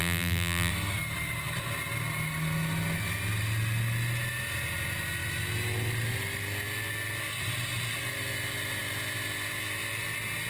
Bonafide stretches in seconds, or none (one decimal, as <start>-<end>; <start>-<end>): 0.7-10.5